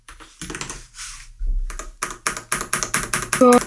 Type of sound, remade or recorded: recorded